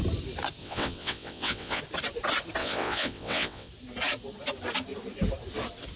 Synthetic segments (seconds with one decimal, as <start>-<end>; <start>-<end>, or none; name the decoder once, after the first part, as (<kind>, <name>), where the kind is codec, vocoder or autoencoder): 0.6-1.8 (vocoder, WaveNeXt); 2.6-3.7